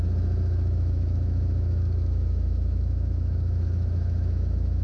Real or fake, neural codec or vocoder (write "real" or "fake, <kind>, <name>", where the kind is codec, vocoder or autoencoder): fake, autoencoder, DAC-VAE